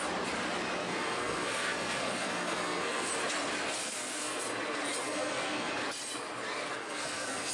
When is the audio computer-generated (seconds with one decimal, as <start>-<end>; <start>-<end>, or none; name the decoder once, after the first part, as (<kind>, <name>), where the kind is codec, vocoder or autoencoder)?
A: 0.8-3.1 (codec, SNAC); 3.8-4.4; 5.0-5.7; 6.8-7.5